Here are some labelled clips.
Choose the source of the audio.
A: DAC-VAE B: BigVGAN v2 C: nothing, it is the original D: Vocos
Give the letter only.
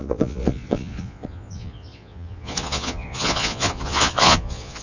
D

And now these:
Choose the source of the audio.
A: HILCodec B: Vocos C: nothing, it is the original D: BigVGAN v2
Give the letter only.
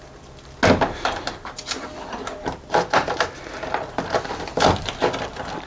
C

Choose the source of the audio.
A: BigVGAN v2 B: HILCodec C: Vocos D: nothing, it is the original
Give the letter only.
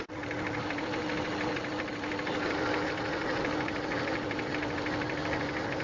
D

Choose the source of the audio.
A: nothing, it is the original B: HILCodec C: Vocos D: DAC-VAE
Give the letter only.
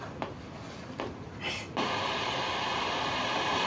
A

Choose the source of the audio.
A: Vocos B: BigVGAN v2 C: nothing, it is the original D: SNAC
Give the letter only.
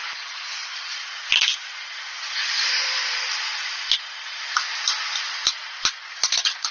C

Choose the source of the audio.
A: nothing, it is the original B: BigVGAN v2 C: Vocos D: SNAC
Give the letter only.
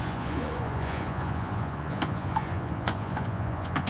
C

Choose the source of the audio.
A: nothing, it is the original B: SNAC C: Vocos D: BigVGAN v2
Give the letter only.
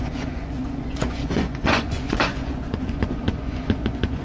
C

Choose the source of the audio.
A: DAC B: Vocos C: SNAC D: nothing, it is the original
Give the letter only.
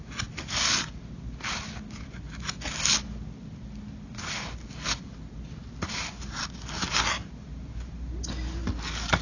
D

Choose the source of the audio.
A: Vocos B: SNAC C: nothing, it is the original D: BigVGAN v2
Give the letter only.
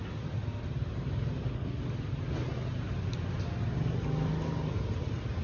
C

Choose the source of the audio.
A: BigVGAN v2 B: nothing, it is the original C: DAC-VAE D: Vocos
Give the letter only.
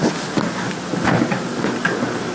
B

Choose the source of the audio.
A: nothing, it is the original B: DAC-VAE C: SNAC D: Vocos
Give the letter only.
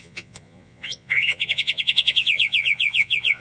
D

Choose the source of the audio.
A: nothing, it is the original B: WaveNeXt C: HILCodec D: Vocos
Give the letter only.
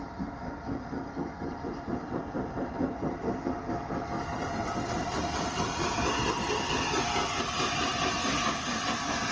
A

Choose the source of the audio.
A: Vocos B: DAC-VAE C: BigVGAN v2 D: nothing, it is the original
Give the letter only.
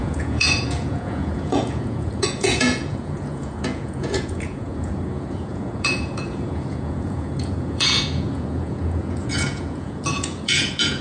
A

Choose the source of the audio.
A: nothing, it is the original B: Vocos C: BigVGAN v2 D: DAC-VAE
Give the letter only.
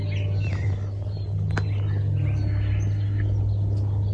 A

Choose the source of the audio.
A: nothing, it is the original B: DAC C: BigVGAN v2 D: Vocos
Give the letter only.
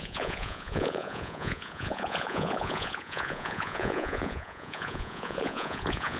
D